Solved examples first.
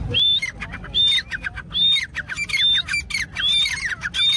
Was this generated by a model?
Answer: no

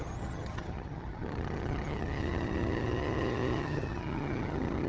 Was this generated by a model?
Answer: yes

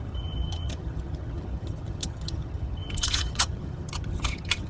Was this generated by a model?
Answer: yes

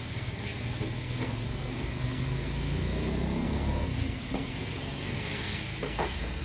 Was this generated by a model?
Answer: yes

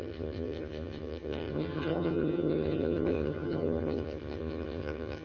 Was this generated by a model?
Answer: yes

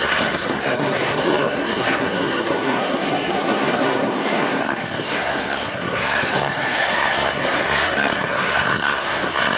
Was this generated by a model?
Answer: yes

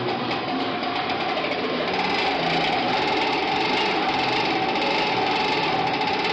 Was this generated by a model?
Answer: no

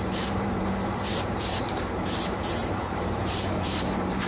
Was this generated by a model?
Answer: yes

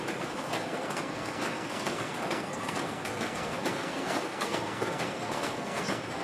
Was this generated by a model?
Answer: yes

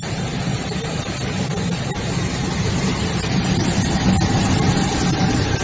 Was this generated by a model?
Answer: no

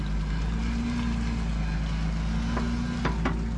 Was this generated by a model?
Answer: no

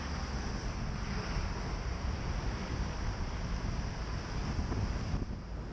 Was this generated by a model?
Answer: no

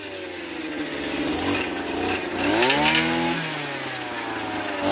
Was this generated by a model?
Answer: no